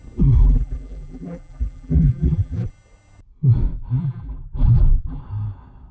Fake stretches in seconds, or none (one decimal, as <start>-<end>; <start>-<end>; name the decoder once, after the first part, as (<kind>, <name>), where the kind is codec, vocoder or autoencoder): 0.4-2.7 (vocoder, BigVGAN v2); 4.0-5.2